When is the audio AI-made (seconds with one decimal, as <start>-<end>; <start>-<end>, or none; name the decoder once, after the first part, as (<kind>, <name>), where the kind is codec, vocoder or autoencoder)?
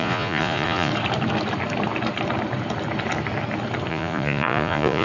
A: 0.0-0.9 (vocoder, Vocos); 3.9-5.0